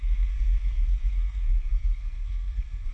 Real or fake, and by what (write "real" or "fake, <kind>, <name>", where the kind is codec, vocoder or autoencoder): fake, codec, SNAC